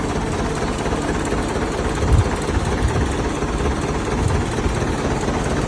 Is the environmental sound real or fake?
real